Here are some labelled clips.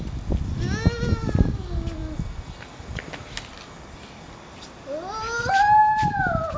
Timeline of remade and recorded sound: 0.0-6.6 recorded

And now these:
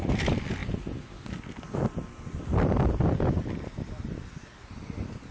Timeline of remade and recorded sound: 0.0-5.3 recorded

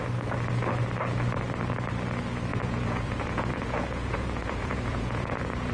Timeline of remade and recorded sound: 0.0-2.5 recorded; 2.5-5.7 remade

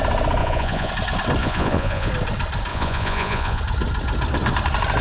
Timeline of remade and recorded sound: 0.0-0.4 recorded; 0.4-0.9 remade; 0.9-1.4 recorded; 1.4-2.1 remade; 2.1-2.7 recorded; 2.7-3.6 remade; 3.6-5.0 recorded

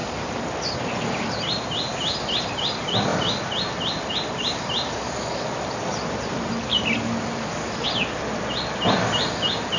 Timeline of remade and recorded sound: 0.0-9.8 recorded

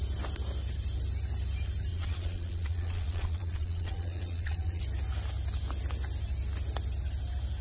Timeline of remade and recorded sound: 0.0-1.9 recorded; 1.9-4.8 remade; 4.8-7.6 recorded

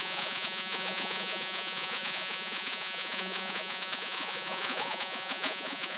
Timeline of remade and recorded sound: 0.0-6.0 remade